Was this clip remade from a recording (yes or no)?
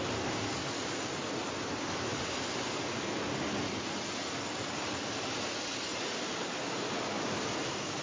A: no